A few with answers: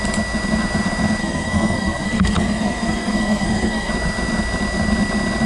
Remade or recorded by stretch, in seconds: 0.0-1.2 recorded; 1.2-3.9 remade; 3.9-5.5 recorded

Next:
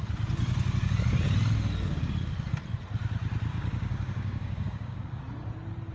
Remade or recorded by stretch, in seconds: 0.0-3.5 recorded; 3.5-5.2 remade; 5.2-5.9 recorded